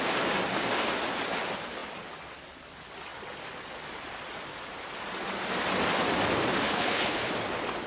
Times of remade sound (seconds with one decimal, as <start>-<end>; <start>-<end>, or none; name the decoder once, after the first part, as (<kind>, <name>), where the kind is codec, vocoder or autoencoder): 6.7-7.3 (codec, HILCodec)